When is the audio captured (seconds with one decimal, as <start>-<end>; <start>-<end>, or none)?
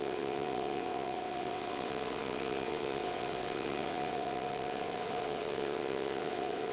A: none